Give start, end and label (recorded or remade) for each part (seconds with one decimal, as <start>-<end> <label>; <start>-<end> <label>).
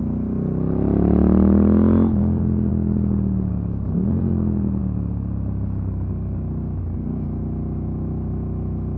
0.0-9.0 recorded